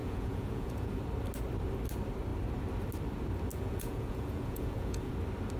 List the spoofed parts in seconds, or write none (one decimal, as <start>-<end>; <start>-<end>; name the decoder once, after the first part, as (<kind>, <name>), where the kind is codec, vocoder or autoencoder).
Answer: 0.0-1.0 (vocoder, Vocos); 3.5-5.1